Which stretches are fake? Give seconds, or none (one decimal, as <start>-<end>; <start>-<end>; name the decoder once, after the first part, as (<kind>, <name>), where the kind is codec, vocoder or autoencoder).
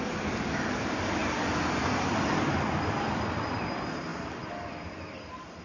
1.2-3.0 (vocoder, BigVGAN v2); 4.1-5.6